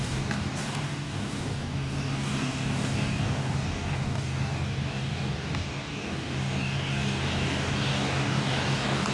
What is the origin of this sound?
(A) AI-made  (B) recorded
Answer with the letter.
A